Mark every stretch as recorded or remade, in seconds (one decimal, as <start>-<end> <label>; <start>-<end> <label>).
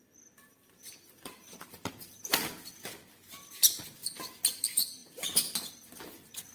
0.0-0.5 recorded; 0.5-2.1 remade; 2.1-6.5 recorded